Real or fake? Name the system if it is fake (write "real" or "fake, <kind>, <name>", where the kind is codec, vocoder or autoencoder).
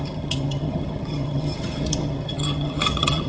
fake, vocoder, HiFi-GAN